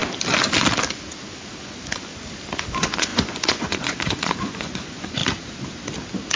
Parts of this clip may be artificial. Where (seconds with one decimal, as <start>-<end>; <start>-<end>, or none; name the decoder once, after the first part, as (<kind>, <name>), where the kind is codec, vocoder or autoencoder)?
1.6-2.1 (vocoder, Vocos); 2.7-5.2